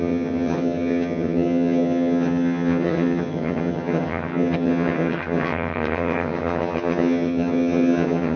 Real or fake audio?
fake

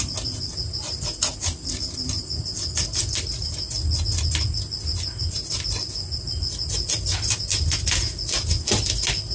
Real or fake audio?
real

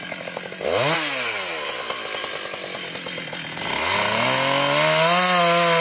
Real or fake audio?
real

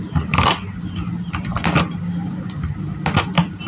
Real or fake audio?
real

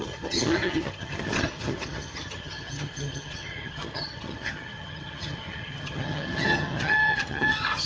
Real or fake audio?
fake